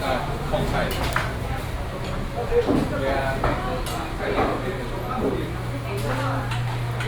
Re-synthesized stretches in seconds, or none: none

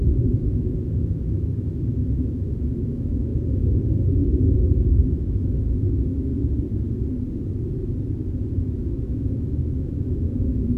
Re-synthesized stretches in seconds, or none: 0.0-3.3 (autoencoder, DAC-VAE); 4.3-6.3; 8.6-10.8

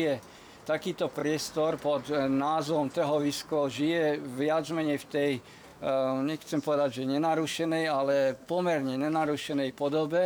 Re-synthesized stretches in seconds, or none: 5.7-9.7 (autoencoder, DAC-VAE)

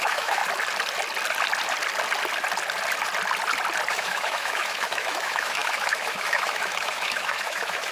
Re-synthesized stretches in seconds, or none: 0.0-0.4 (autoencoder, DAC-VAE); 3.9-7.9